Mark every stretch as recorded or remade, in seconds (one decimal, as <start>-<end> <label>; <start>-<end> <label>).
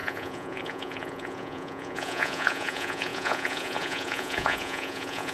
0.0-5.3 remade